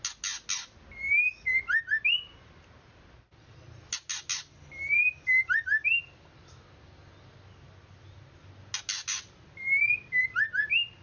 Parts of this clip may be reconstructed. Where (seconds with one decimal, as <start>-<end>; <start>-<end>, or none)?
none